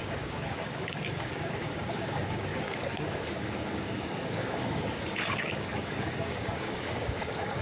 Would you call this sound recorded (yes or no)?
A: no